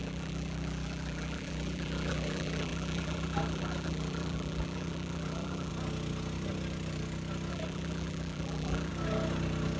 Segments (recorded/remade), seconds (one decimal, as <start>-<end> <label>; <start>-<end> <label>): 0.0-5.7 remade; 5.7-7.5 recorded; 7.5-8.9 remade; 8.9-9.8 recorded